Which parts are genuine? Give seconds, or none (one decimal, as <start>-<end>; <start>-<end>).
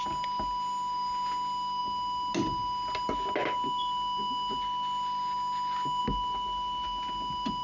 0.0-7.6